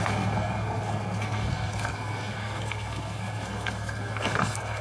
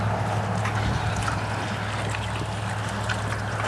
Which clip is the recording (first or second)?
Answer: second